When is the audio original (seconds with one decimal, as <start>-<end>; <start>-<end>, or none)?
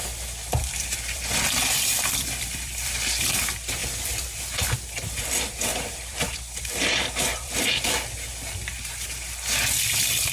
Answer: 3.3-3.8; 4.4-5.7; 7.9-10.3